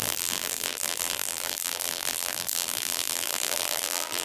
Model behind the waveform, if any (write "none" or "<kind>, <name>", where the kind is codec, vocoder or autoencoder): vocoder, BigVGAN v2